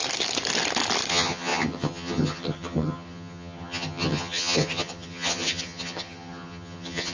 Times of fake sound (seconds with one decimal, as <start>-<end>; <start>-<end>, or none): 1.1-7.1